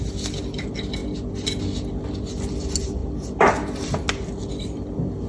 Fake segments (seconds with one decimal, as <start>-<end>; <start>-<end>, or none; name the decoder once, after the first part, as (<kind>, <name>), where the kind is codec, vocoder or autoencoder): none